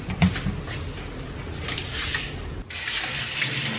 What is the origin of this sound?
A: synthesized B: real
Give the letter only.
B